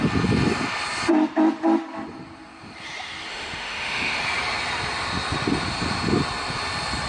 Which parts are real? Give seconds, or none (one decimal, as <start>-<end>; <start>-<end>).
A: 0.0-3.3; 4.2-7.1